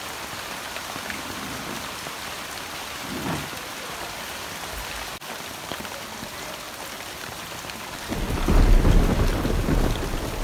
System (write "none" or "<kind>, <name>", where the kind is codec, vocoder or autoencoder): none